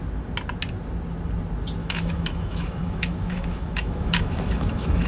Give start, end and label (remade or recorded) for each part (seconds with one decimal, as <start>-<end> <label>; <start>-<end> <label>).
0.0-1.8 recorded; 1.8-5.1 remade

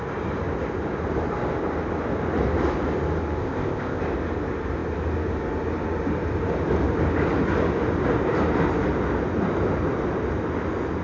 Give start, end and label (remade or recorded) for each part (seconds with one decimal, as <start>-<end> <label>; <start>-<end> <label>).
0.0-3.4 recorded; 3.4-4.0 remade; 4.0-11.0 recorded

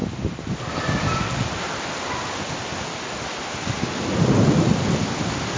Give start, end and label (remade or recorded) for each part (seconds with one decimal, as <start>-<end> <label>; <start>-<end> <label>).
0.0-5.6 recorded

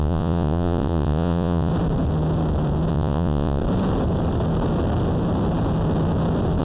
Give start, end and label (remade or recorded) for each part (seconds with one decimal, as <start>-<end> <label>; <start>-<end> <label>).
0.0-1.7 remade; 1.7-2.9 recorded; 2.9-3.6 remade; 3.6-6.6 recorded